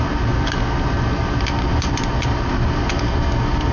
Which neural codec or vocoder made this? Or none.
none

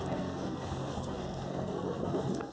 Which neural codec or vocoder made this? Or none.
codec, SNAC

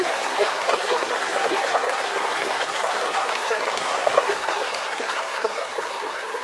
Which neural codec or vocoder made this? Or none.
codec, SNAC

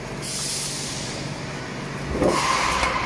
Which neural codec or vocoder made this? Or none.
none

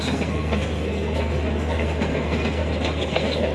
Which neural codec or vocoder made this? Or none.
codec, SNAC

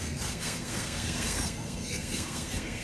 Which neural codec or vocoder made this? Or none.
codec, SNAC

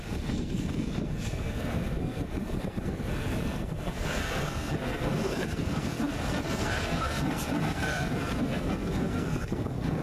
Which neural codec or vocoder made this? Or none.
codec, SNAC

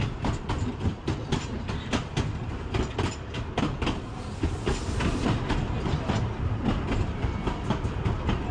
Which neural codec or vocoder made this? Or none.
none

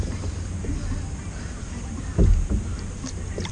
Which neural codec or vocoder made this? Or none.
none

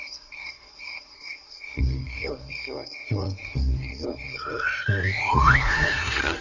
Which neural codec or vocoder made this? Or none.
codec, SNAC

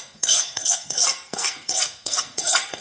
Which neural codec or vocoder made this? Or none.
codec, SNAC